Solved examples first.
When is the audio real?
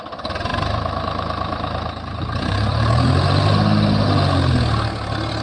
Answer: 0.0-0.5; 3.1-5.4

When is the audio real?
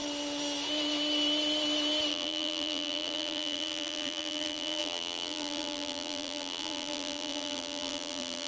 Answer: 0.0-2.1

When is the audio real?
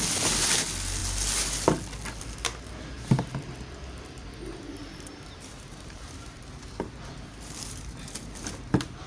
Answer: 0.0-4.8; 8.5-9.1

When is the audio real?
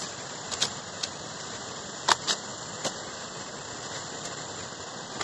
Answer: 2.5-5.2